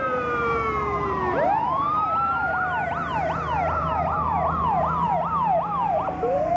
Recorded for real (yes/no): no